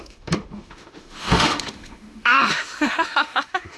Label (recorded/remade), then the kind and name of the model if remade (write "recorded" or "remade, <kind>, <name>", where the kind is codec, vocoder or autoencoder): remade, autoencoder, DAC-VAE